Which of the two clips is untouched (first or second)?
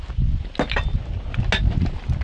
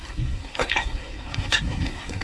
first